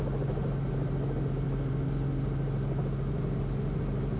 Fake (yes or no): no